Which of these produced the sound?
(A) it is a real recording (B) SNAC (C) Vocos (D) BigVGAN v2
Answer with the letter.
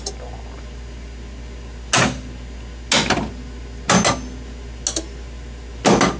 A